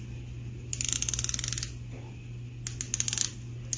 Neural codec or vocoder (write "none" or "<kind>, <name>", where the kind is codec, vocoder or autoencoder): none